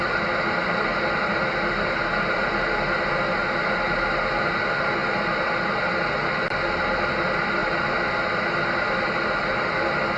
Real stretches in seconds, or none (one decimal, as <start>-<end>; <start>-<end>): 0.0-7.6; 8.4-10.2